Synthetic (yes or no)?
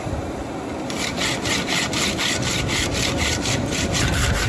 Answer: yes